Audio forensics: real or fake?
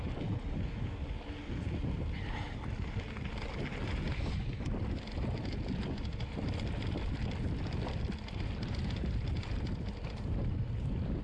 real